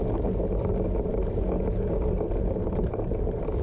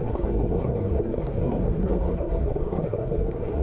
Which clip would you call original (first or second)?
first